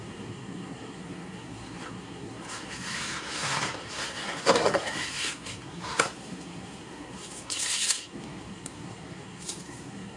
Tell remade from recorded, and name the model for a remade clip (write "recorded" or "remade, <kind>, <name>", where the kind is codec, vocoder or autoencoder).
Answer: remade, codec, SNAC